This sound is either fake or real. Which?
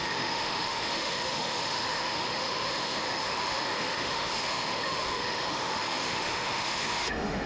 fake